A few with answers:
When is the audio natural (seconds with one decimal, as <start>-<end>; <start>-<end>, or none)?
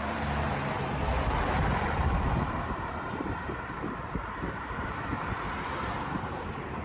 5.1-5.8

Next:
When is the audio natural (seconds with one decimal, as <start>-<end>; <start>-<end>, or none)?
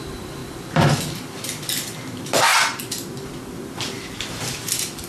0.4-1.0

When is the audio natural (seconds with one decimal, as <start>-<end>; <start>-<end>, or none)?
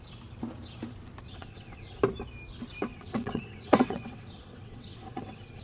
0.0-1.3; 2.0-2.9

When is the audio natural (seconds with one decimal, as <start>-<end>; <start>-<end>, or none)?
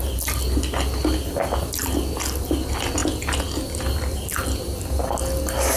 0.0-5.8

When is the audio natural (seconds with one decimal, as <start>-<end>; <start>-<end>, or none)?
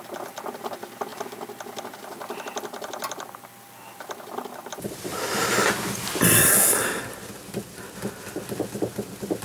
0.0-9.4